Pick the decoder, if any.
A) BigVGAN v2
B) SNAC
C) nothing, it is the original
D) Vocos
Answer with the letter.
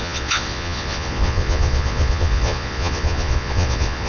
D